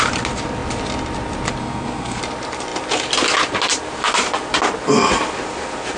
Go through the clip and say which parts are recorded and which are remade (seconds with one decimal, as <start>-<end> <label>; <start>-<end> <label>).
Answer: 0.0-1.6 recorded; 1.6-2.2 remade; 2.2-6.0 recorded